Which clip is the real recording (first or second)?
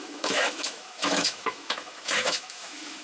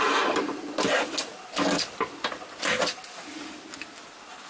second